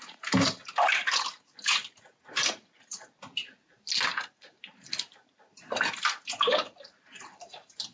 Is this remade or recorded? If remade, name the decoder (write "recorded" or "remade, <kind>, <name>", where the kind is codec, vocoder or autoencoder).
recorded